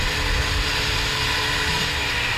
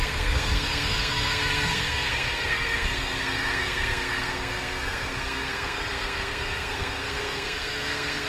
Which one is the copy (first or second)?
second